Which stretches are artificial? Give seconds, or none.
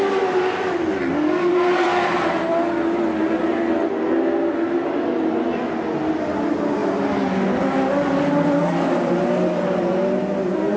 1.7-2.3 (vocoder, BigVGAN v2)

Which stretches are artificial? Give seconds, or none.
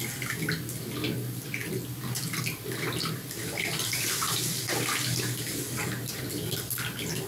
none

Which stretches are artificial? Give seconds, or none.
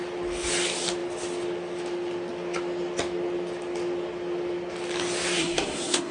5.4-6.1 (codec, SNAC)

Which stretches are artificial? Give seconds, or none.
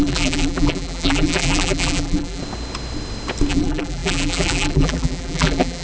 0.0-2.4 (vocoder, BigVGAN v2); 3.5-5.8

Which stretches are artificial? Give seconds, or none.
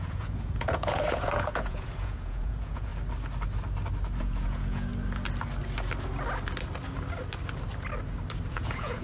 0.0-2.9 (vocoder, Vocos); 4.2-4.9; 8.5-9.0